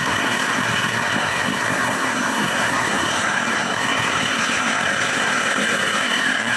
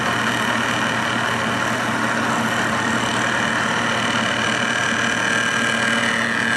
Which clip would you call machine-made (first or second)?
first